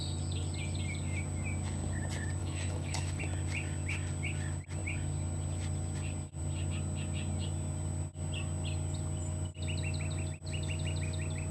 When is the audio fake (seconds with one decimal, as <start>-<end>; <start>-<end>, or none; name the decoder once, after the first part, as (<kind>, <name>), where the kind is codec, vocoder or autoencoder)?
2.4-3.2 (autoencoder, DAC-VAE)